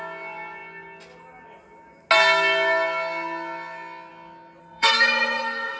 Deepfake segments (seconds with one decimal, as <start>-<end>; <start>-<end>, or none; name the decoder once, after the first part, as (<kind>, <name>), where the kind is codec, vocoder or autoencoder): 4.6-5.8 (codec, SNAC)